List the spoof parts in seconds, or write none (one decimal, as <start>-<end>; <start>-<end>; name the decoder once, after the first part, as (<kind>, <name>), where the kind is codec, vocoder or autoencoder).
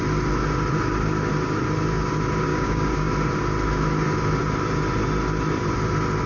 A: 2.5-3.1 (codec, DAC)